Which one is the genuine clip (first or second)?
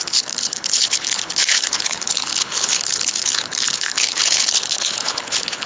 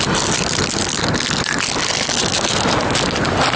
second